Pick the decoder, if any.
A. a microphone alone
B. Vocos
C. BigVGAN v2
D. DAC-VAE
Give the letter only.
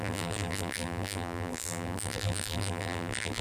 C